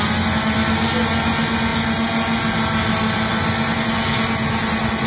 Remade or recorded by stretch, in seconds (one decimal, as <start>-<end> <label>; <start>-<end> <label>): 0.0-5.1 recorded